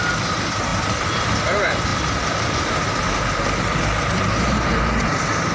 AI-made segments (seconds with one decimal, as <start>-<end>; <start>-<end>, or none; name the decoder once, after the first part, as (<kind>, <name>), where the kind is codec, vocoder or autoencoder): 0.0-0.7 (vocoder, BigVGAN v2); 1.4-5.5

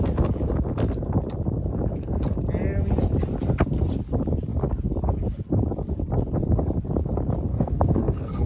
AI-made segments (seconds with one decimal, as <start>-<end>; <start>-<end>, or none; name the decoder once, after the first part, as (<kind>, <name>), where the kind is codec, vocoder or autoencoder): 7.5-8.5 (codec, SNAC)

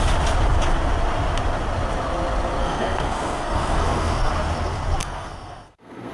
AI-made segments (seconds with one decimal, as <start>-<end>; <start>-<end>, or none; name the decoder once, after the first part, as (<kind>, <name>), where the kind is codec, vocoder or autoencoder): 2.6-4.3 (codec, SNAC); 5.0-6.1

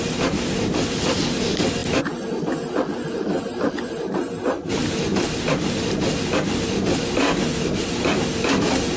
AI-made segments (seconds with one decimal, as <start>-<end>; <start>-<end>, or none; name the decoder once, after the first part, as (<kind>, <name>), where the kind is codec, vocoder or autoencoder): none

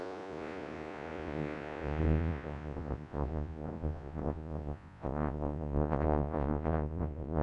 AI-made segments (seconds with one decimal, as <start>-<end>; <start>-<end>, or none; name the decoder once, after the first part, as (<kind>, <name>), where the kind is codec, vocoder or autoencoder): 0.0-7.4 (vocoder, Vocos)

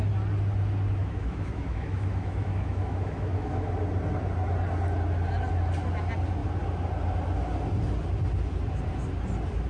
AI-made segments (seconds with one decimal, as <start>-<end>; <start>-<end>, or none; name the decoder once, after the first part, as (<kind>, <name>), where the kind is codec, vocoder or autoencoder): 1.0-3.7 (autoencoder, DAC-VAE)

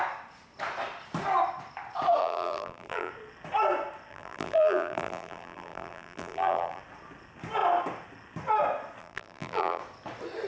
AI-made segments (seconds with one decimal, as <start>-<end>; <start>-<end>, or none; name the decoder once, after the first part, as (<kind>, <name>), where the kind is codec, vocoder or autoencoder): 2.2-3.1 (vocoder, BigVGAN v2); 4.1-6.8; 9.0-9.8